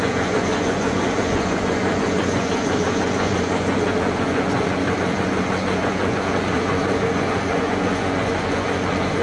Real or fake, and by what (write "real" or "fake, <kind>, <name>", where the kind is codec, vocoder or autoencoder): fake, vocoder, Vocos